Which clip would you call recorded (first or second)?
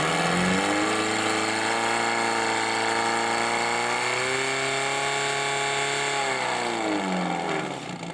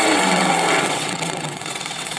first